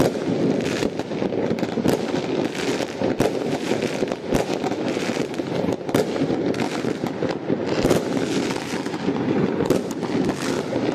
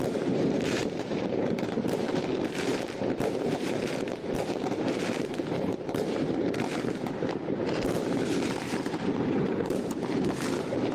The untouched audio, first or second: first